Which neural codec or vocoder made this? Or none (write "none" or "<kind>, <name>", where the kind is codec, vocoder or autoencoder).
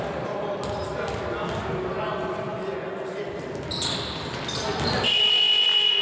none